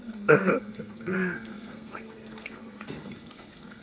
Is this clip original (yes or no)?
no